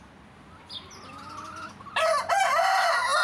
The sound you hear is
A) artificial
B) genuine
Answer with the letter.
B